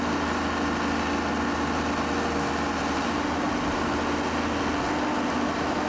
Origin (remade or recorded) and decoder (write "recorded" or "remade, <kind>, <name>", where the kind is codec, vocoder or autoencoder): recorded